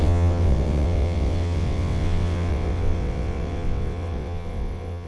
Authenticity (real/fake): fake